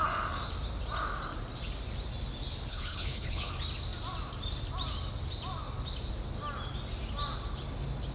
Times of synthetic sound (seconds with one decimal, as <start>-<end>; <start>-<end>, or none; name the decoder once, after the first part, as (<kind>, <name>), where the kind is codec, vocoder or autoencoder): 2.7-3.5 (codec, HILCodec)

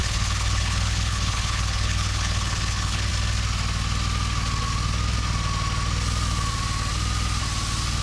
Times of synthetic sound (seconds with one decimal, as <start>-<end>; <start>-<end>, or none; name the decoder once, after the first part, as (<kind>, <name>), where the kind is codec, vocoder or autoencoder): 0.0-3.1 (codec, HILCodec)

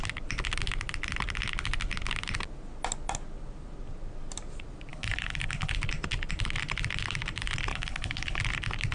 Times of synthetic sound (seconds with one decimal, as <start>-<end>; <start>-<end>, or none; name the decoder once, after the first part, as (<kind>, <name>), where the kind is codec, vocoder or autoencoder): 4.9-5.7 (codec, HILCodec); 7.7-8.4

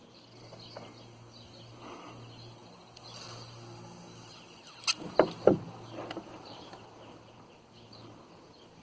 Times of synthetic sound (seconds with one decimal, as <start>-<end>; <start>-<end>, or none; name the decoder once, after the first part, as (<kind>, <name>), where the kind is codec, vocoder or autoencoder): none

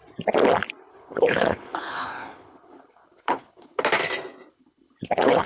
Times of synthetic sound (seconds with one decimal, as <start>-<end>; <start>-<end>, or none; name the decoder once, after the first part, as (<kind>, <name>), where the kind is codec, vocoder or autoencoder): 0.9-3.8 (codec, HILCodec); 4.5-5.5

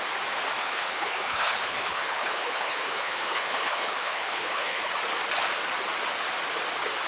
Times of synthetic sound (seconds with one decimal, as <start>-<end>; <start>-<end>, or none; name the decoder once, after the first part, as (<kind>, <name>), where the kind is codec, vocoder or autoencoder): 0.6-4.9 (codec, HILCodec)